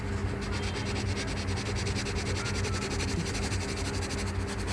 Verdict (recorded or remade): recorded